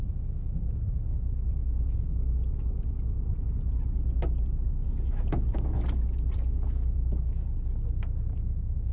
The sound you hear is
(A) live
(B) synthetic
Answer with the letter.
A